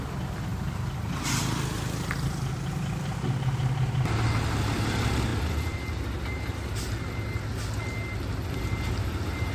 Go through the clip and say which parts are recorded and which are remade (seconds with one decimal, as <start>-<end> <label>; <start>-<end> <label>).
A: 0.0-9.5 recorded